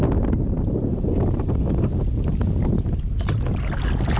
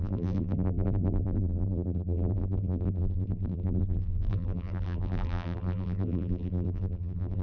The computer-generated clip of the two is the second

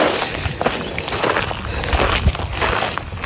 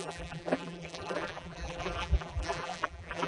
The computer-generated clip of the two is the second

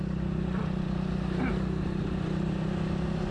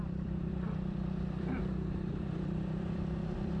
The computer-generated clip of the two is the second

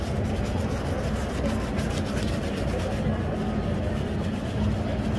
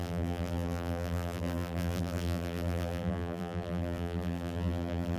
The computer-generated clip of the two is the second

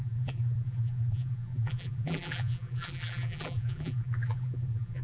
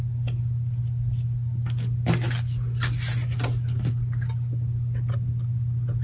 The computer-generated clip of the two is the first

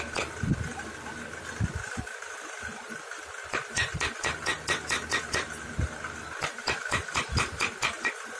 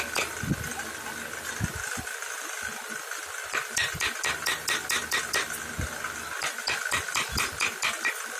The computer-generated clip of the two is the first